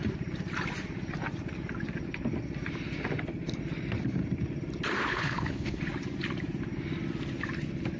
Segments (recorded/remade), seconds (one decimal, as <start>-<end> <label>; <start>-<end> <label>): 0.0-5.1 recorded; 5.1-5.8 remade; 5.8-8.0 recorded

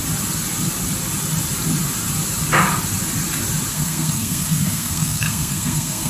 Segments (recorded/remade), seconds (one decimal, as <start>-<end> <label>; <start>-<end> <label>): 0.0-3.7 recorded; 3.7-6.1 remade

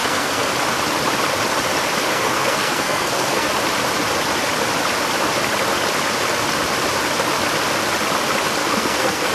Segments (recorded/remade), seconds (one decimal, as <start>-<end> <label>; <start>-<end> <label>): 0.0-0.5 remade; 0.5-2.1 recorded; 2.1-3.5 remade; 3.5-8.6 recorded; 8.6-9.3 remade